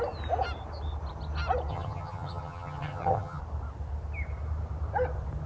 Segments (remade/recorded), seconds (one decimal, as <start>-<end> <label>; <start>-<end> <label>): 0.0-1.7 recorded; 1.7-3.4 remade; 3.4-5.5 recorded